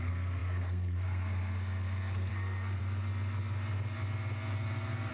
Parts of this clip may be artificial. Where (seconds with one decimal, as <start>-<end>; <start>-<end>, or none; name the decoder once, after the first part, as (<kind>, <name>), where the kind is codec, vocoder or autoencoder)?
0.0-2.8 (codec, SNAC)